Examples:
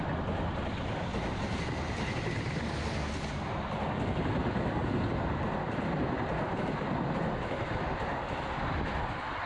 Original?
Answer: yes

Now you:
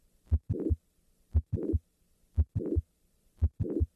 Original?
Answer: no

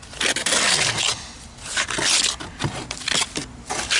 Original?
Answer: yes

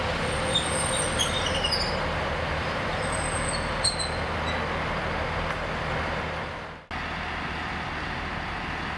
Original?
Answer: yes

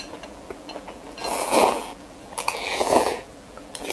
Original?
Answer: no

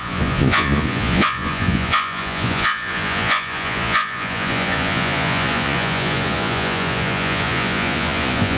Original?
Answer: no